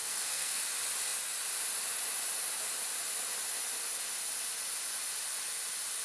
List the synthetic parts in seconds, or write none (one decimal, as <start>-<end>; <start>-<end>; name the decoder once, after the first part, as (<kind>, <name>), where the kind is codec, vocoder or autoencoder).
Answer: 0.0-0.6 (codec, SNAC)